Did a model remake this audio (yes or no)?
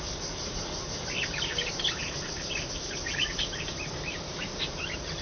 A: yes